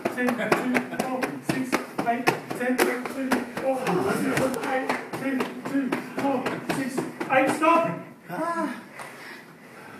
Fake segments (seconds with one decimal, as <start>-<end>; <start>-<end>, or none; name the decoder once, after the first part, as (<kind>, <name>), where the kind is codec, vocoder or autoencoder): 2.8-4.9 (autoencoder, DAC-VAE)